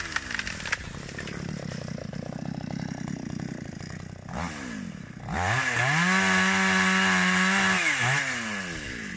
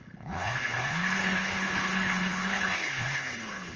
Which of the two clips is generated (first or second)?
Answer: second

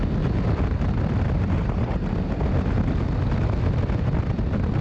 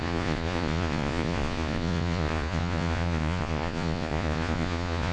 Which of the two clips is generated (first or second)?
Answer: second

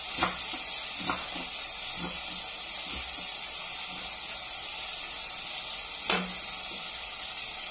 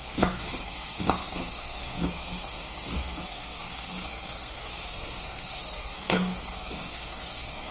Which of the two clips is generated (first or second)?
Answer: second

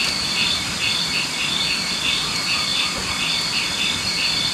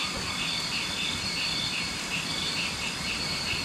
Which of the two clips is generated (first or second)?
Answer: second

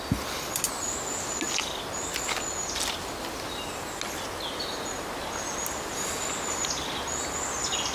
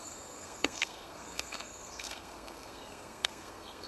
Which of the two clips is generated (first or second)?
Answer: second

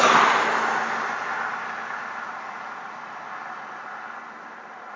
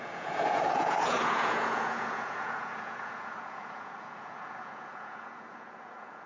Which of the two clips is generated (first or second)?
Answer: second